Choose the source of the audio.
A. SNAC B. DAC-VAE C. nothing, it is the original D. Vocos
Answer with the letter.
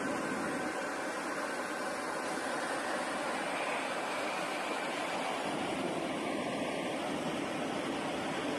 C